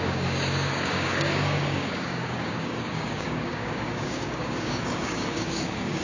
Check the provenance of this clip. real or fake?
fake